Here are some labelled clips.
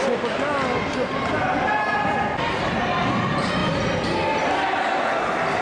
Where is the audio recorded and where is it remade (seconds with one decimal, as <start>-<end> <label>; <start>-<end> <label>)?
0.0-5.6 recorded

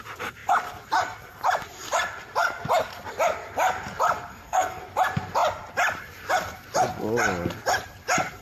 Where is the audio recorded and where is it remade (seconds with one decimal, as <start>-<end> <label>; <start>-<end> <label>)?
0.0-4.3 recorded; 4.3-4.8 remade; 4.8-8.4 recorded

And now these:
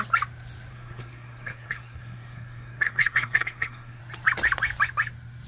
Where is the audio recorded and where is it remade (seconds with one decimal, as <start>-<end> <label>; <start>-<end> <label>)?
0.0-0.7 recorded; 0.7-4.0 remade; 4.0-5.5 recorded

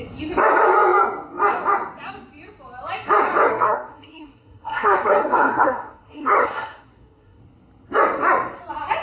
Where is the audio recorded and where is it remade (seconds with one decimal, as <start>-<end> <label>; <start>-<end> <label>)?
0.0-3.5 recorded; 3.5-7.4 remade; 7.4-9.0 recorded

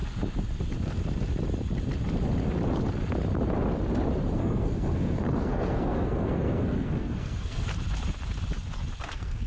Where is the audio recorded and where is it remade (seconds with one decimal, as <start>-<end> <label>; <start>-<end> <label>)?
0.0-4.3 recorded; 4.3-7.7 remade; 7.7-9.1 recorded; 9.1-9.5 remade

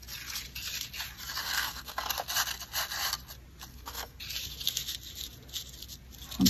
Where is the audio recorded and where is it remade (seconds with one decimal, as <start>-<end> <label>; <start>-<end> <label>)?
0.0-1.4 recorded; 1.4-2.1 remade; 2.1-3.7 recorded; 3.7-4.2 remade; 4.2-6.5 recorded

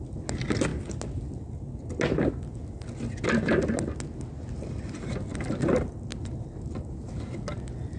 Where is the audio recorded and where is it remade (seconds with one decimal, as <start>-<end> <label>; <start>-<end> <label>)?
0.0-8.0 recorded